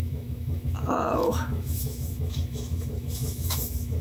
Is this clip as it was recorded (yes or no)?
no